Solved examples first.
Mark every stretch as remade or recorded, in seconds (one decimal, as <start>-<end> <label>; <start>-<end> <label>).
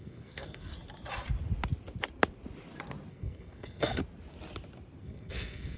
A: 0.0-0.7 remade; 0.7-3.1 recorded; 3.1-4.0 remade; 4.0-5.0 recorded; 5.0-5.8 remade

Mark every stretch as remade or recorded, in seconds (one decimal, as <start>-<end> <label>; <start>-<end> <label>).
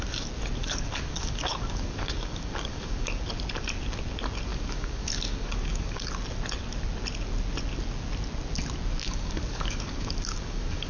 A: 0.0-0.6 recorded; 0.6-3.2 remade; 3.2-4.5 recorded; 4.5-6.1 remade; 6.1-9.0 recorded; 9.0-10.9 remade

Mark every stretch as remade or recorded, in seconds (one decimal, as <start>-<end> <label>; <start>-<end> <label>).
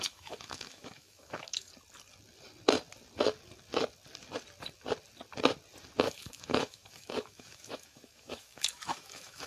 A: 0.0-1.7 remade; 1.7-6.0 recorded; 6.0-9.5 remade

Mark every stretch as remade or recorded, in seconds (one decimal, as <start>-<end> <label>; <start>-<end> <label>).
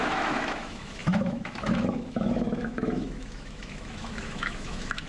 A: 0.0-5.1 remade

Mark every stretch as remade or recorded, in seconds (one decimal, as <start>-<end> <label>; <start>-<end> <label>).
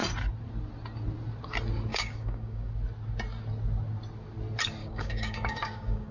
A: 0.0-1.9 recorded; 1.9-2.7 remade; 2.7-4.8 recorded; 4.8-6.1 remade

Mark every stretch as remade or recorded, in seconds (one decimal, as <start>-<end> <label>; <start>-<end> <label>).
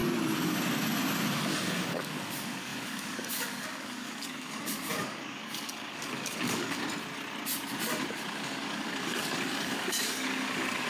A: 0.0-1.4 recorded; 1.4-6.8 remade; 6.8-8.1 recorded; 8.1-10.9 remade